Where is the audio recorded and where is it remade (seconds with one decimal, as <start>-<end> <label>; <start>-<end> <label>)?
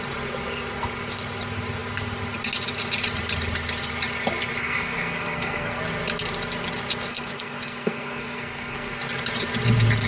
0.0-4.6 recorded; 4.6-5.8 remade; 5.8-7.1 recorded; 7.1-9.0 remade; 9.0-10.1 recorded